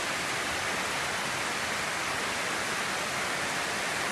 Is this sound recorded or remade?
recorded